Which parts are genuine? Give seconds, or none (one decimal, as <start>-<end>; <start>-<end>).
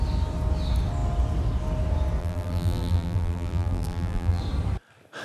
0.0-2.2; 4.4-5.2